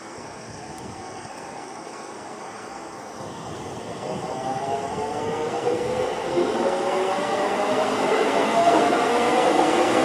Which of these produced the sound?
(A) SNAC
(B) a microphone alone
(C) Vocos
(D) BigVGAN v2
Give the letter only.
A